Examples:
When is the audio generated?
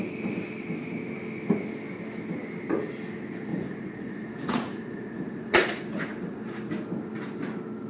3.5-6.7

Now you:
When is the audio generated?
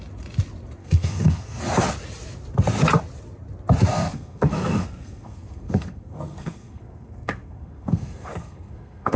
0.8-1.6; 3.9-9.2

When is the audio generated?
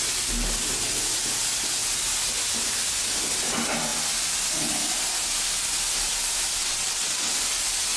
6.6-7.3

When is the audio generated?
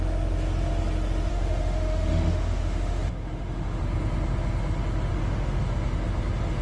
1.3-3.8; 5.1-5.6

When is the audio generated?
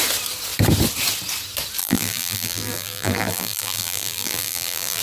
1.8-5.0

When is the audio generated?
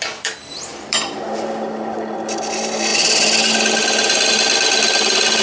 0.0-2.9; 4.3-5.4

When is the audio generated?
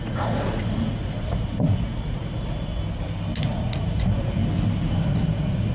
0.0-2.7; 3.4-4.4; 5.0-5.7